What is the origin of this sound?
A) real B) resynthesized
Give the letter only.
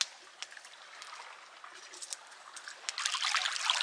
A